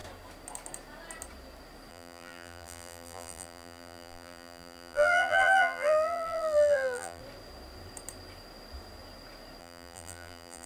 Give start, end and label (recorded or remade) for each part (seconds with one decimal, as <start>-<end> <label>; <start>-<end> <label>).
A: 0.0-1.9 recorded; 1.9-7.2 remade; 7.2-9.6 recorded; 9.6-10.7 remade